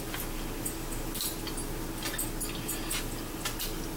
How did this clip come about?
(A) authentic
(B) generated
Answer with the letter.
A